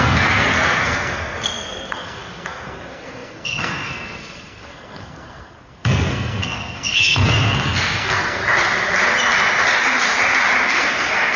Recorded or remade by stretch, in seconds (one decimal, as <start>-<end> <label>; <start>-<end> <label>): 0.0-8.4 remade; 8.4-10.7 recorded; 10.7-11.4 remade